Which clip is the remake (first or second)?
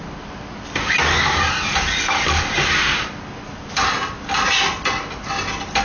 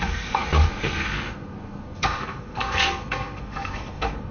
second